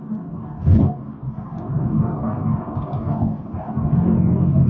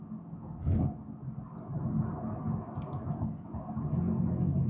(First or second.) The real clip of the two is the second